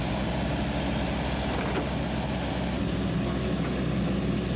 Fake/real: real